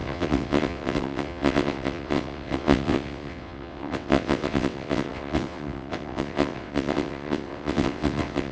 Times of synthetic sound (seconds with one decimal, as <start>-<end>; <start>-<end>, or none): 0.0-8.5